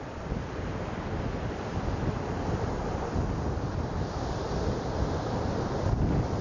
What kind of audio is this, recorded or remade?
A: recorded